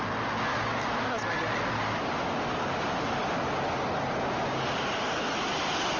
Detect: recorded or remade recorded